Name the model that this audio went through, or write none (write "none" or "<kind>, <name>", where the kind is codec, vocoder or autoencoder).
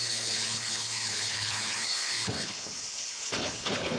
codec, HILCodec